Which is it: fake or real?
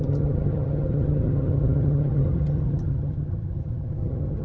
fake